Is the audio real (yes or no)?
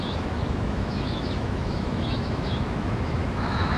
no